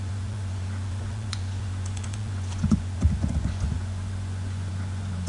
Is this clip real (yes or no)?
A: no